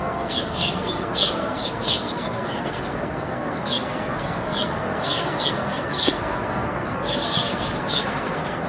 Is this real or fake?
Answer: fake